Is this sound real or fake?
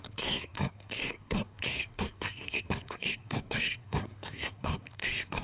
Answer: fake